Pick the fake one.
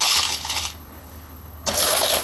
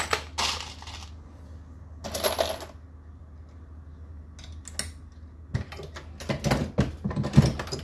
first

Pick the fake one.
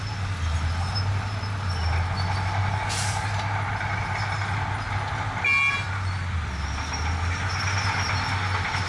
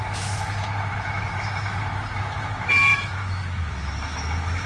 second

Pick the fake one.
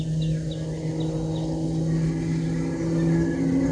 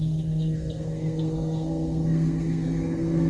second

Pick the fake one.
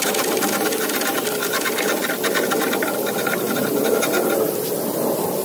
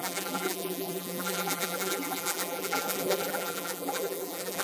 second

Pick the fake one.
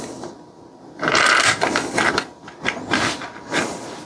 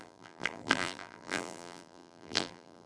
second